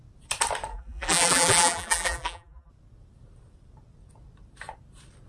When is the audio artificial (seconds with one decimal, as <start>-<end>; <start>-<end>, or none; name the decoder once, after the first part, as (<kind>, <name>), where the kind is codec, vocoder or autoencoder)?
0.7-2.7 (vocoder, BigVGAN v2)